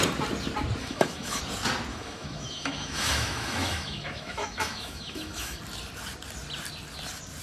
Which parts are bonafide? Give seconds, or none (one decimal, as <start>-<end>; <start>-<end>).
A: 0.0-0.8; 1.4-1.9; 5.6-7.4